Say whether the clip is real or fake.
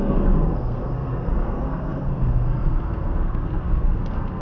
fake